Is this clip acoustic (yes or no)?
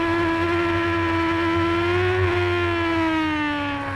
yes